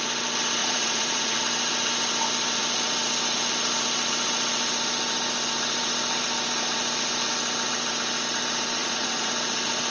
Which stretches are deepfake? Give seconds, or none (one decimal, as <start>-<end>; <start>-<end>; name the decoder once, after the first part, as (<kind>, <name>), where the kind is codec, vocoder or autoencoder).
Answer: 0.6-1.4 (vocoder, Vocos); 8.8-9.3